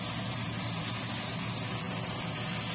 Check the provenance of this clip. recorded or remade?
recorded